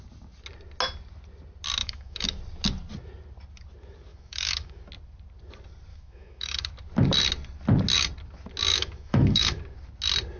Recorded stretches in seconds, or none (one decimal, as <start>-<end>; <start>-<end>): 0.0-1.8; 2.4-4.1; 4.8-5.9; 6.7-8.7; 9.6-10.4